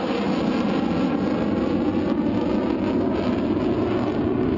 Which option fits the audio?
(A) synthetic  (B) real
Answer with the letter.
B